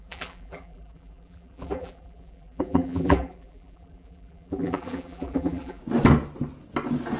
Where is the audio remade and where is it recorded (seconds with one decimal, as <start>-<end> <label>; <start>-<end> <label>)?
0.0-5.8 remade; 5.8-7.2 recorded

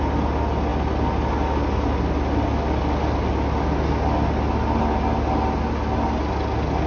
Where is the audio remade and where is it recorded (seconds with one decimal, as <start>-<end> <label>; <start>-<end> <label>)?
0.0-6.9 recorded